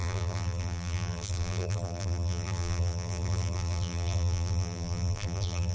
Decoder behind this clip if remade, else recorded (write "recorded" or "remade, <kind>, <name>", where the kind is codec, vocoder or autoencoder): remade, vocoder, BigVGAN v2